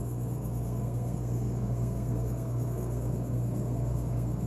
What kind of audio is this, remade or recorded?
remade